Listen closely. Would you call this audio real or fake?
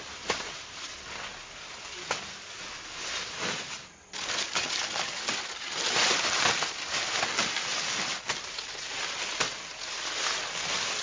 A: real